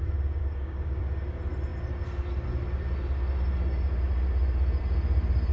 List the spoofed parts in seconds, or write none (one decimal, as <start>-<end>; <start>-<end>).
0.4-1.0